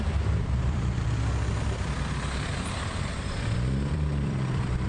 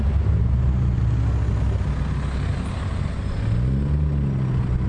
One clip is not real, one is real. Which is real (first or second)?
second